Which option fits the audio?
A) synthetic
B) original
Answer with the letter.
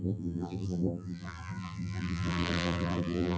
A